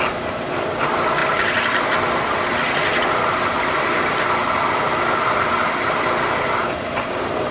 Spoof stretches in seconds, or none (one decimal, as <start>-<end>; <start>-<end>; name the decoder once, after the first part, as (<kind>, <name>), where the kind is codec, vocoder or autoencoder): none

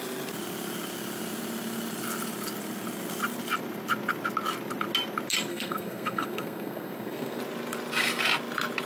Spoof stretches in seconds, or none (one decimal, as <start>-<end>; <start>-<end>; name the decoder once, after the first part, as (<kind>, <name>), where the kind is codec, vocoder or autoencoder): 5.5-7.4 (codec, SNAC)

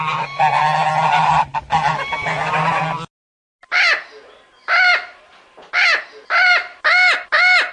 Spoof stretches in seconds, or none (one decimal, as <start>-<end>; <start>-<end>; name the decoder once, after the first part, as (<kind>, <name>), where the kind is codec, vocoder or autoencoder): none

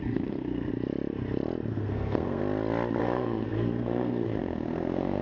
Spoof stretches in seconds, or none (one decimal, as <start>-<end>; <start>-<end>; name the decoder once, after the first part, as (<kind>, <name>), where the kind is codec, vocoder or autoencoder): 0.0-0.7 (codec, SNAC); 1.7-2.4; 3.0-5.2